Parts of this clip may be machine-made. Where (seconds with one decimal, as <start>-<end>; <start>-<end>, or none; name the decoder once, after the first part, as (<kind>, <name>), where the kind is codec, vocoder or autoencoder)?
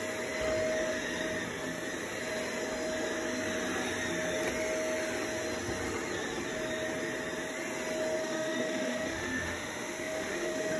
8.2-10.8 (autoencoder, DAC-VAE)